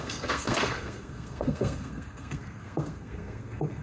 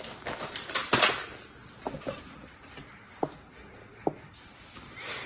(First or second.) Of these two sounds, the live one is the second